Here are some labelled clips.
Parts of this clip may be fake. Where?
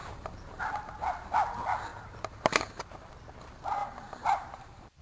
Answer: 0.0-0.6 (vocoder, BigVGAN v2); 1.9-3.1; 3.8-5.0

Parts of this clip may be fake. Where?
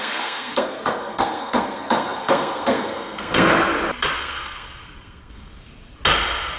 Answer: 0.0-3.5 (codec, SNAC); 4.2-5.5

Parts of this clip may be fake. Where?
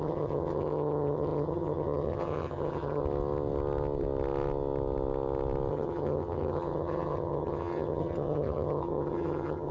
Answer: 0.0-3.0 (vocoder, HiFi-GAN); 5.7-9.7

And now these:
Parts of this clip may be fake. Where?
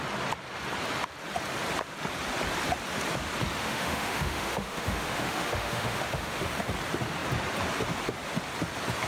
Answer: 3.6-6.4 (autoencoder, DAC-VAE)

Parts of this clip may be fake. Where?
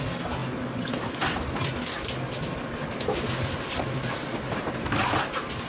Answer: 0.0-5.7 (vocoder, BigVGAN v2)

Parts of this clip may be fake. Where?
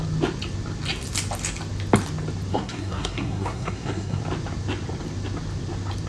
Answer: 2.5-4.2 (codec, SNAC)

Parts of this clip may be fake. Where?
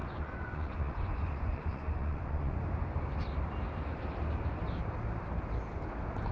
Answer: 0.0-2.6 (vocoder, Vocos)